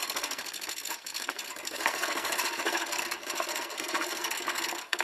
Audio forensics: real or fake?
fake